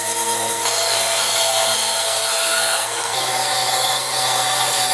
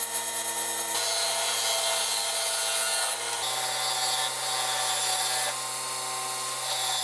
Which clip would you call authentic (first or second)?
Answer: second